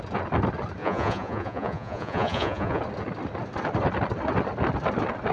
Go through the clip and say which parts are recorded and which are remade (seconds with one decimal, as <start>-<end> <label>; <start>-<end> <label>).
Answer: 0.0-0.8 recorded; 0.8-2.8 remade; 2.8-5.3 recorded